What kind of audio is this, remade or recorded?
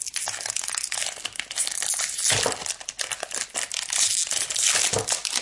recorded